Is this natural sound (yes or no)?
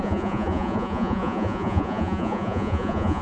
no